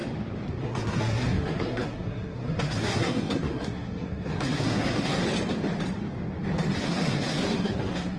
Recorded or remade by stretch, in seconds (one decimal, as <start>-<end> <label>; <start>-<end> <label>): 0.0-0.6 recorded; 0.6-5.2 remade; 5.2-6.8 recorded; 6.8-8.2 remade